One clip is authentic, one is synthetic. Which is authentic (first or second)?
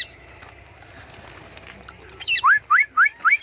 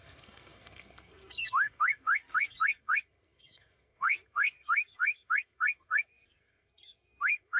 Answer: first